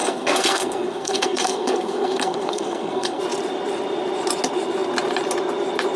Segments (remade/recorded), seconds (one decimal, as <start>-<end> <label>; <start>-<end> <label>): 0.0-3.2 remade; 3.2-6.0 recorded